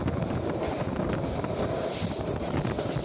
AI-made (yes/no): no